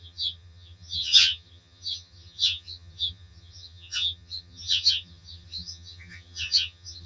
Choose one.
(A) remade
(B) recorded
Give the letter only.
A